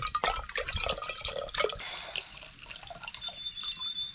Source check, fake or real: real